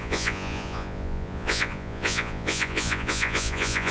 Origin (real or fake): fake